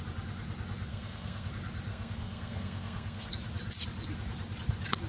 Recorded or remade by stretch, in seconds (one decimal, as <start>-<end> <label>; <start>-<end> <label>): 0.0-0.9 recorded; 0.9-1.5 remade; 1.5-1.9 recorded; 1.9-3.3 remade; 3.3-5.1 recorded